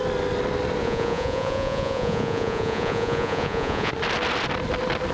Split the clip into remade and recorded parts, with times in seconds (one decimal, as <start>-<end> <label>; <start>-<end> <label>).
0.0-0.8 recorded; 0.8-3.9 remade; 3.9-5.1 recorded

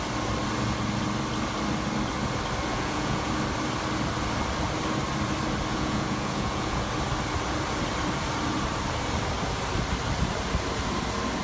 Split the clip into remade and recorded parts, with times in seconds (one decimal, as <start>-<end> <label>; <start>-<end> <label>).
0.0-2.7 recorded; 2.7-3.3 remade; 3.3-5.7 recorded; 5.7-6.9 remade; 6.9-11.4 recorded

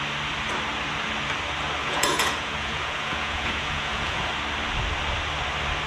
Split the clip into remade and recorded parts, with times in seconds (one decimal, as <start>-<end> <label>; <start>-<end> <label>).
0.0-1.8 recorded; 1.8-4.3 remade; 4.3-5.9 recorded

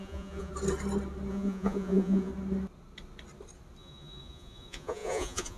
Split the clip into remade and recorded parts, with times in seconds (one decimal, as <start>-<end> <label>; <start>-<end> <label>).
0.0-0.5 remade; 0.5-1.3 recorded; 1.3-2.3 remade; 2.3-3.8 recorded; 3.8-5.6 remade

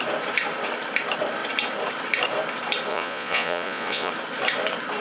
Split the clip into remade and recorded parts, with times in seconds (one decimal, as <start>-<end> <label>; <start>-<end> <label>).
0.0-2.9 recorded; 2.9-4.1 remade; 4.1-5.0 recorded

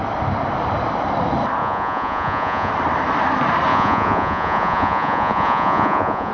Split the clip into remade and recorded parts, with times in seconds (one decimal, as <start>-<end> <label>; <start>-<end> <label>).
0.0-1.6 recorded; 1.6-2.7 remade; 2.7-3.7 recorded; 3.7-6.3 remade

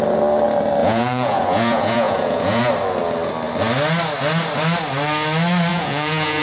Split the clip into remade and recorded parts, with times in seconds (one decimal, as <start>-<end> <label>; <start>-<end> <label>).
0.0-0.8 recorded; 0.8-2.6 remade; 2.6-5.7 recorded; 5.7-6.4 remade